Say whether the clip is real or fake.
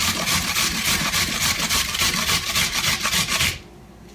real